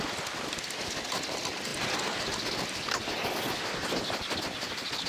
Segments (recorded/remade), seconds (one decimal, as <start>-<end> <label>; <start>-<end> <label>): 0.0-5.1 recorded